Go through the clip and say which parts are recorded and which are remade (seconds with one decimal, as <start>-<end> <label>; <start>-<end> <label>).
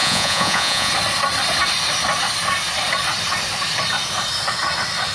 0.0-0.9 remade; 0.9-5.1 recorded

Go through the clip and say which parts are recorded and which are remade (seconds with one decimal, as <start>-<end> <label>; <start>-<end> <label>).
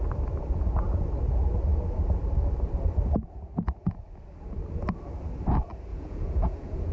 0.0-5.9 recorded; 5.9-6.9 remade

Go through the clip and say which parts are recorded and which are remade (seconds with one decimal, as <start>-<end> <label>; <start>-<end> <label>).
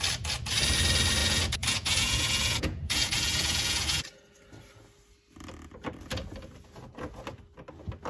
0.0-1.2 recorded; 1.2-4.0 remade; 4.0-8.1 recorded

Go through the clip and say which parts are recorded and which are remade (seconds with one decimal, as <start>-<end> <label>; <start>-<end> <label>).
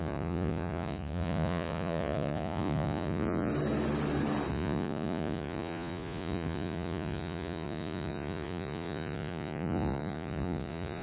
0.0-3.5 remade; 3.5-4.5 recorded; 4.5-11.0 remade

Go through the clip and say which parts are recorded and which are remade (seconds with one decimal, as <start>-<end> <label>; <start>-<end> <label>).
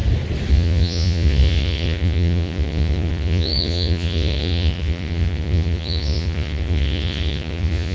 0.0-0.5 recorded; 0.5-7.9 remade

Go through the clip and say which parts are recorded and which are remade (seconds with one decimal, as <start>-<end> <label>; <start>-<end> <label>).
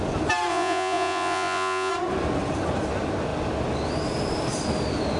0.0-0.5 recorded; 0.5-1.9 remade; 1.9-5.2 recorded